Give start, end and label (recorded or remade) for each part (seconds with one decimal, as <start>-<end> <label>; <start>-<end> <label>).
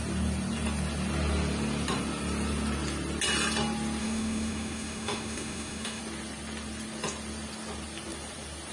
0.0-4.0 recorded; 4.0-6.0 remade; 6.0-8.7 recorded